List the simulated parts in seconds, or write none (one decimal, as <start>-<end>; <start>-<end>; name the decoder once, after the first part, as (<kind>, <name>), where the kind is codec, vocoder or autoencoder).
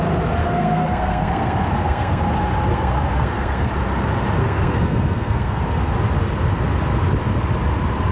0.4-2.2 (codec, SNAC); 2.7-3.7; 4.4-5.9